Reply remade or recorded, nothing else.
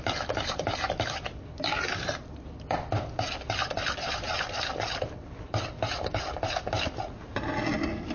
recorded